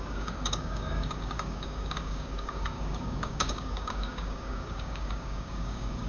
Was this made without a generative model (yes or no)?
no